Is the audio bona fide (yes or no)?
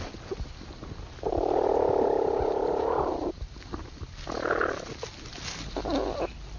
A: yes